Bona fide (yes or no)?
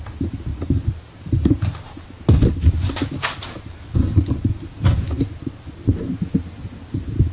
yes